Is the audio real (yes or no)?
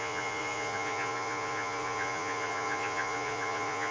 no